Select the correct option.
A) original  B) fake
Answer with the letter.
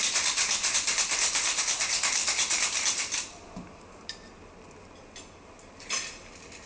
A